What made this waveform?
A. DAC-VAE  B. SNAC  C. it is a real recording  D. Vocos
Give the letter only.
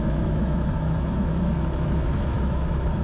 A